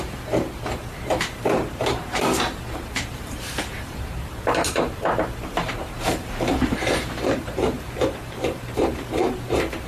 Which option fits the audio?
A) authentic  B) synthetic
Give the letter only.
B